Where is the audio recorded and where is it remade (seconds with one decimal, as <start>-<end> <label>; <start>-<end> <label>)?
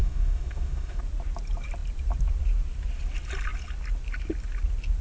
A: 0.0-1.0 remade; 1.0-5.0 recorded